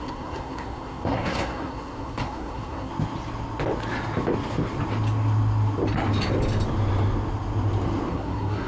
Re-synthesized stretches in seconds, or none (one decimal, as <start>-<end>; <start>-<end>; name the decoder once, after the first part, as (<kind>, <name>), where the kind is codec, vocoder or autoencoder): 0.0-2.9 (codec, SNAC); 8.1-8.7